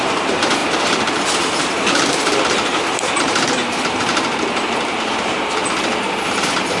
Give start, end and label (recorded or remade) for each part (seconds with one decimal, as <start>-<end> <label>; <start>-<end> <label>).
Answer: 0.0-5.6 remade; 5.6-6.8 recorded